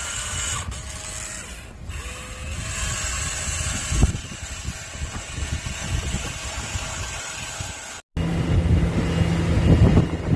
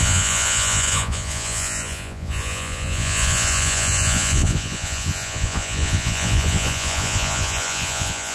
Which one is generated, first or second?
second